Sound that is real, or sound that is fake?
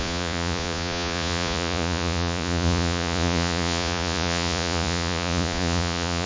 fake